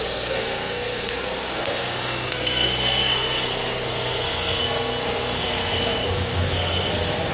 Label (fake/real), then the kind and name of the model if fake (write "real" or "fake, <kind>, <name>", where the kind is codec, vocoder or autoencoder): fake, codec, SNAC